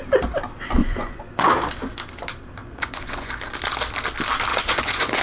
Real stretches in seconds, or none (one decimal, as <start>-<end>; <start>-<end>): 0.0-0.8; 1.4-2.6; 3.3-4.5

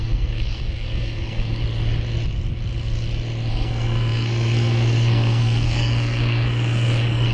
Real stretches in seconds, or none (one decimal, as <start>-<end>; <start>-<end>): 1.6-3.5

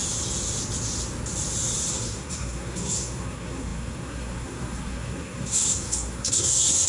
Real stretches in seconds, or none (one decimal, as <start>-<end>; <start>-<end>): 0.0-1.9

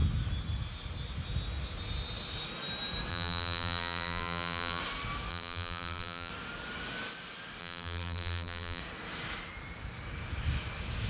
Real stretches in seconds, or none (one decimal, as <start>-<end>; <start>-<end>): 0.0-3.1; 4.8-5.3; 6.3-7.6; 8.8-11.1

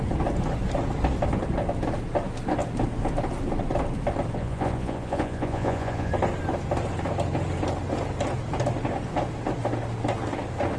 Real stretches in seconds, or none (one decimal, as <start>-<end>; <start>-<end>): 0.0-4.4; 6.1-10.8

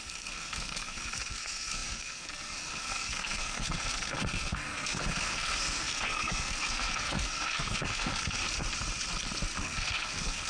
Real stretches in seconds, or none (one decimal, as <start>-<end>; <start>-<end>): 8.4-9.6

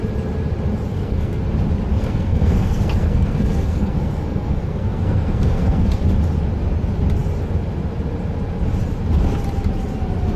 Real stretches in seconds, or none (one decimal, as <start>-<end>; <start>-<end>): 0.0-0.9; 1.4-1.9; 6.0-10.4